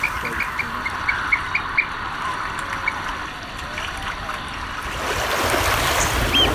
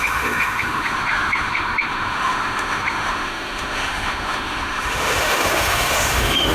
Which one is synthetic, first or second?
second